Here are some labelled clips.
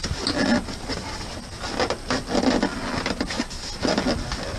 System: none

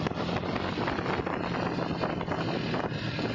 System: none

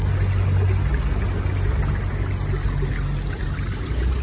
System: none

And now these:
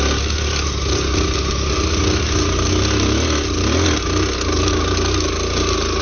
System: none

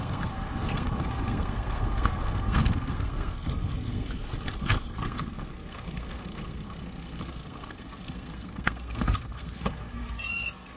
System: codec, SNAC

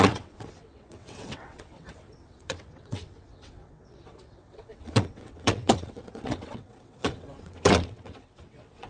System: vocoder, WaveNeXt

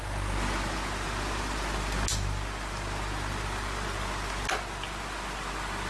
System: none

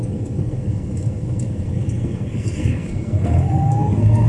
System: codec, SNAC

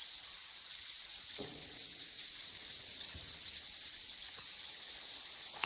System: vocoder, Vocos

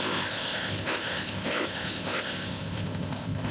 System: codec, ZipCodec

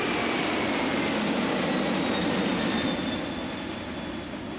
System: none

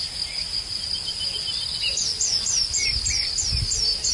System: none